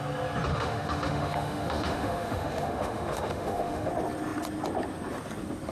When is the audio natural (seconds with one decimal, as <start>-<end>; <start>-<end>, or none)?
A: 0.0-0.5; 3.9-5.7